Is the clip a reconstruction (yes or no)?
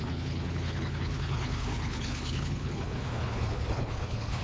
yes